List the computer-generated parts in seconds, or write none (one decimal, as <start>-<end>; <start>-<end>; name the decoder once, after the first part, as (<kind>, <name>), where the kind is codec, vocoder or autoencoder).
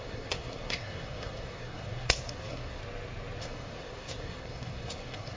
0.0-2.8 (codec, SNAC); 3.4-5.4